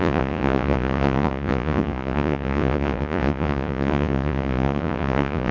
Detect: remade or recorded remade